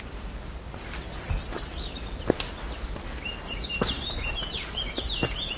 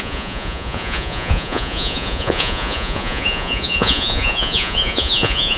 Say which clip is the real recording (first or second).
first